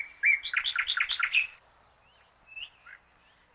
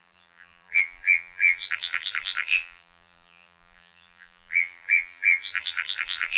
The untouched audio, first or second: first